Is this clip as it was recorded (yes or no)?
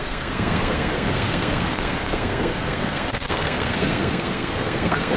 no